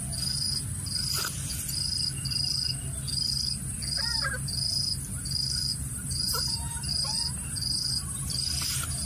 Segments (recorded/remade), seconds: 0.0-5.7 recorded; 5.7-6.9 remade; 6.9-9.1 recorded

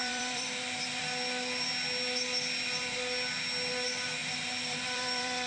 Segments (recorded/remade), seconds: 0.0-1.0 remade; 1.0-4.2 recorded; 4.2-5.5 remade

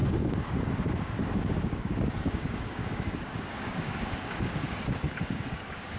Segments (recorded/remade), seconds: 0.0-6.0 remade